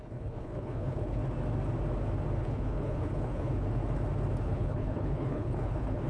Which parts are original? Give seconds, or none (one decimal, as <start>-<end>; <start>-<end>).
1.2-2.4; 3.8-4.4